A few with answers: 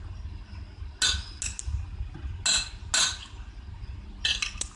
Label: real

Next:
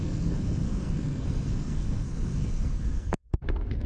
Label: fake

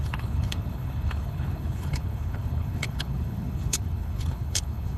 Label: fake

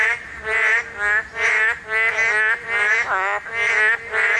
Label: real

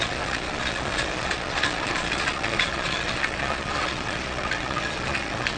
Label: fake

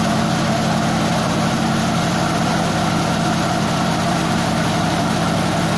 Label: real